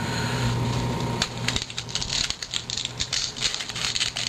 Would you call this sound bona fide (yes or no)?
no